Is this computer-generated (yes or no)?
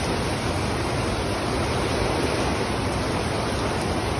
no